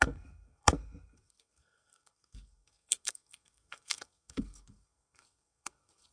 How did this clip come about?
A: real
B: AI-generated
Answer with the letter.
B